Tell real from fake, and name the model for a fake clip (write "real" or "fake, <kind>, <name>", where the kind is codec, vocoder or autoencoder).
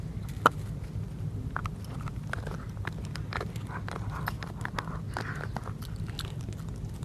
real